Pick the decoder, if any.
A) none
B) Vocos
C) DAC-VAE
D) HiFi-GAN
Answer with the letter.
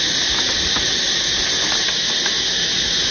A